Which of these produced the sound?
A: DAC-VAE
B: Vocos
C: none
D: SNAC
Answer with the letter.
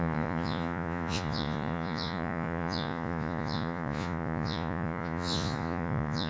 B